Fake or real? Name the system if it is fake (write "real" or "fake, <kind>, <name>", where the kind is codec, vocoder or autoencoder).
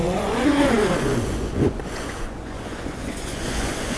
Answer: fake, vocoder, Vocos